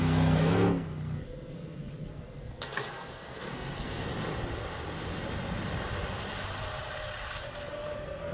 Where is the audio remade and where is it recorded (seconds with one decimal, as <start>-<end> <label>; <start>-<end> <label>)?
0.0-4.1 remade; 4.1-7.7 recorded; 7.7-8.3 remade